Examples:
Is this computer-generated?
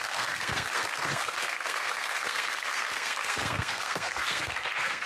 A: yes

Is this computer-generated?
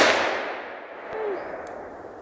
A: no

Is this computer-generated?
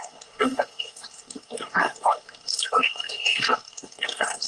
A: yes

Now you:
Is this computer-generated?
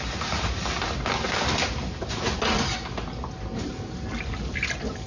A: no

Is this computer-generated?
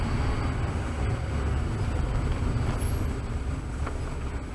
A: no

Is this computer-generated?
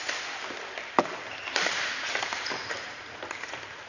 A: yes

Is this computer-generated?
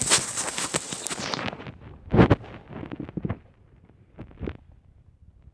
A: no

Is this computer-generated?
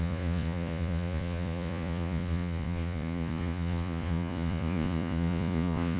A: yes